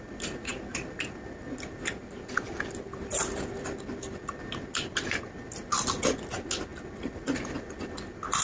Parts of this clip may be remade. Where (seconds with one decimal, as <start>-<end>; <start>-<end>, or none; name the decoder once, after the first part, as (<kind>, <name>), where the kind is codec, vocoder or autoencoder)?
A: none

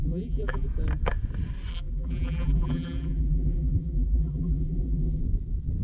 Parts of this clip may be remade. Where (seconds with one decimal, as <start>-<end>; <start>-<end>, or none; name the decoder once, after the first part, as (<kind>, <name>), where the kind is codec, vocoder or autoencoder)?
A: 0.0-0.7 (vocoder, BigVGAN v2); 1.7-5.2

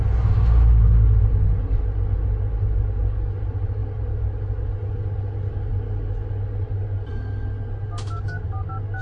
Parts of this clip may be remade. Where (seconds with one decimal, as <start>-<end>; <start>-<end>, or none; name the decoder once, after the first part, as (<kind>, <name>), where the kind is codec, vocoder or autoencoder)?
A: none

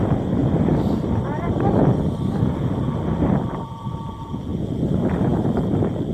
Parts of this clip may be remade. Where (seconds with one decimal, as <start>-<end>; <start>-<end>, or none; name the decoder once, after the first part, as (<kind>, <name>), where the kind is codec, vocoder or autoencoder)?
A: none

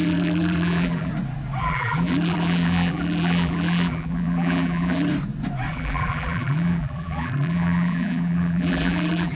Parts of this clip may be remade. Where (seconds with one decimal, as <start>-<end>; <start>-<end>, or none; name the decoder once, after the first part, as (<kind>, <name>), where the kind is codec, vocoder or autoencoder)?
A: 0.0-1.1 (vocoder, BigVGAN v2); 1.6-5.1; 5.7-9.3